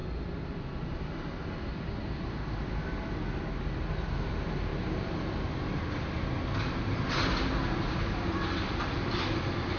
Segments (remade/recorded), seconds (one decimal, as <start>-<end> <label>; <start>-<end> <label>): 0.0-9.8 recorded